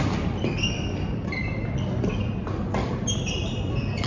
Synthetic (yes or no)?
no